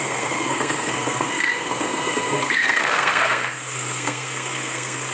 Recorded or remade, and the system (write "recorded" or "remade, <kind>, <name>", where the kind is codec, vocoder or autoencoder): remade, codec, SNAC